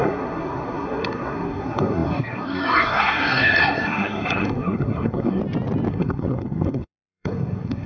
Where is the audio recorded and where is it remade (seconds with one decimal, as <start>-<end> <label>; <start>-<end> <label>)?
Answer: 0.0-5.4 remade; 5.4-5.9 recorded; 5.9-7.9 remade